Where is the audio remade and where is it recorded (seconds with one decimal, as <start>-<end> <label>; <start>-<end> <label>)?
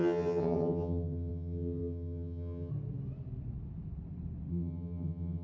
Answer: 0.0-2.7 remade; 2.7-4.5 recorded; 4.5-5.4 remade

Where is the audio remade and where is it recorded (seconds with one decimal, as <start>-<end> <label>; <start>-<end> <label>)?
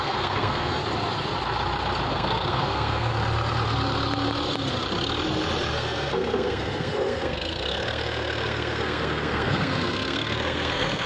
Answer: 0.0-0.8 remade; 0.8-2.1 recorded; 2.1-3.1 remade; 3.1-5.7 recorded; 5.7-11.1 remade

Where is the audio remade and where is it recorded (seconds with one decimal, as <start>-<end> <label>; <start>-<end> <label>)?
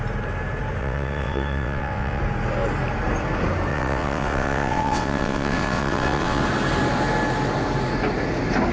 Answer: 0.0-0.8 recorded; 0.8-2.2 remade; 2.2-3.7 recorded; 3.7-6.4 remade; 6.4-8.7 recorded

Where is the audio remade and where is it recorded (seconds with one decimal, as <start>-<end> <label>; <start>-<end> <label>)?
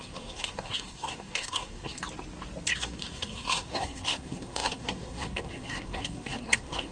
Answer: 0.0-2.0 remade; 2.0-2.7 recorded; 2.7-6.9 remade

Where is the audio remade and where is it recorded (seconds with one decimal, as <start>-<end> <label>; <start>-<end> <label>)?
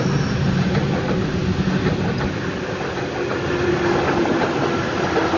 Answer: 0.0-5.4 recorded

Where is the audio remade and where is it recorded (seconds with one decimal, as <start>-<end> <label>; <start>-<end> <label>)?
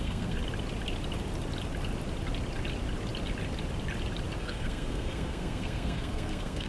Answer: 0.0-0.4 remade; 0.4-4.4 recorded; 4.4-6.7 remade